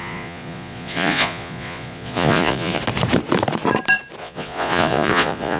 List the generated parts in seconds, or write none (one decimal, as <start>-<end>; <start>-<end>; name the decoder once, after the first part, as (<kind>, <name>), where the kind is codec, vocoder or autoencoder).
0.0-2.8 (vocoder, Vocos); 4.2-5.6